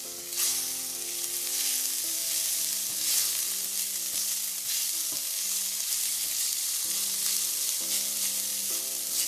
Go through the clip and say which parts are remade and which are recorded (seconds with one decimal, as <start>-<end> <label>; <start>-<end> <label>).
0.0-6.4 recorded; 6.4-7.9 remade; 7.9-9.3 recorded